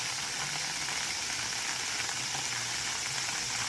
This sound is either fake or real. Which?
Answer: real